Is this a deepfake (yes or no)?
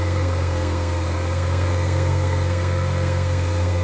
yes